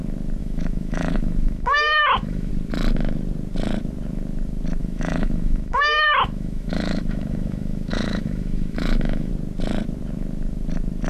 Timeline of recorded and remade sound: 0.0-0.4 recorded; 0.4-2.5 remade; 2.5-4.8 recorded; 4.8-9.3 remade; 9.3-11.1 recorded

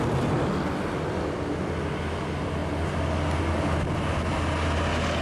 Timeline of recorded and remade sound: 0.0-5.2 recorded